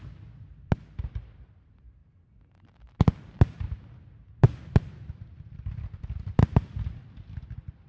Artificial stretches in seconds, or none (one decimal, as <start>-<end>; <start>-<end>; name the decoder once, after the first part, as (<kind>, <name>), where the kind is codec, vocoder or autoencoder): none